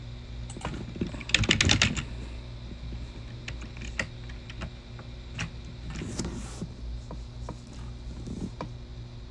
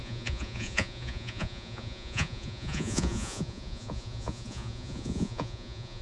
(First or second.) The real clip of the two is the first